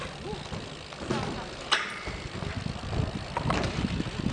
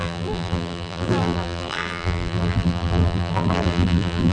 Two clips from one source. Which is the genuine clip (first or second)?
first